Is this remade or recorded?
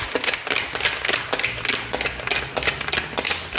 recorded